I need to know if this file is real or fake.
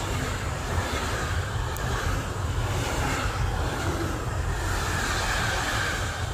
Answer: real